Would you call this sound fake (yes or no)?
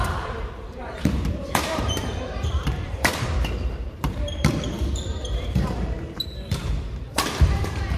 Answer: yes